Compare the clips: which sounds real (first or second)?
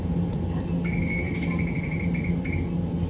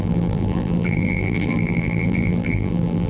first